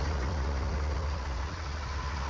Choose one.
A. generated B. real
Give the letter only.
A